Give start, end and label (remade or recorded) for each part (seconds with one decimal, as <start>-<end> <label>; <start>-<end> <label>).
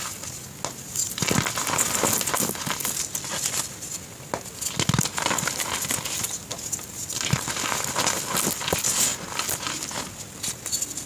0.0-11.1 recorded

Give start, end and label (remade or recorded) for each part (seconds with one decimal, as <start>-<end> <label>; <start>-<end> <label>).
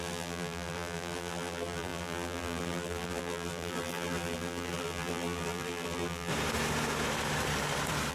0.0-6.3 remade; 6.3-8.1 recorded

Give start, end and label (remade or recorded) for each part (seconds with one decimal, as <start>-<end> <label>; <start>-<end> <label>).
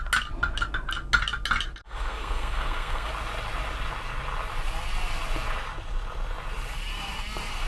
0.0-1.8 recorded; 1.8-3.1 remade; 3.1-7.7 recorded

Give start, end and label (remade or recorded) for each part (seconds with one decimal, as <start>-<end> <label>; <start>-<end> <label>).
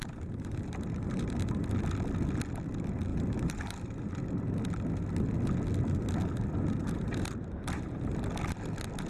0.0-1.3 remade; 1.3-3.1 recorded; 3.1-4.1 remade; 4.1-6.8 recorded; 6.8-8.2 remade; 8.2-9.1 recorded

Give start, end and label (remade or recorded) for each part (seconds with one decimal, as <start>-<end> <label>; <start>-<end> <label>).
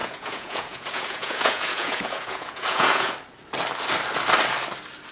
0.0-3.1 remade; 3.1-5.1 recorded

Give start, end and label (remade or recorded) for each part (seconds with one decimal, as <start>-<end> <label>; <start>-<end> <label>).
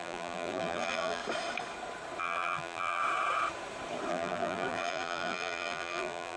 0.0-1.2 remade; 1.2-2.2 recorded; 2.2-3.0 remade; 3.0-4.1 recorded; 4.1-6.4 remade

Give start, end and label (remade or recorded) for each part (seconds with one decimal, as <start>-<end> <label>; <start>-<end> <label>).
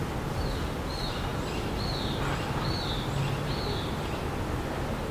0.0-5.1 recorded